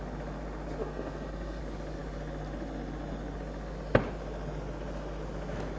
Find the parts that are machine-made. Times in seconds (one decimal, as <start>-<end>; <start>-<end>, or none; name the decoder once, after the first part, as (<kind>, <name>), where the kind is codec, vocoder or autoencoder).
0.8-1.6 (codec, SNAC)